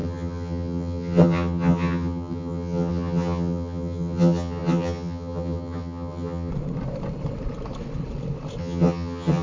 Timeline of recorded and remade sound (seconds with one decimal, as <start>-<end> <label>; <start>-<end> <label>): 0.0-6.5 remade; 6.5-8.6 recorded; 8.6-9.4 remade